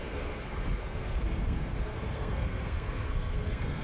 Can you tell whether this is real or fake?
fake